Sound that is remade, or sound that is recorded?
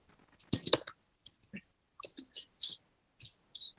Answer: recorded